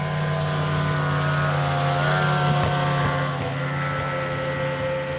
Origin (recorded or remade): recorded